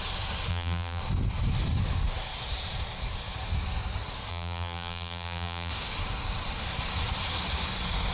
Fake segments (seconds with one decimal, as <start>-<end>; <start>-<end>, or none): 0.5-1.0; 4.3-5.7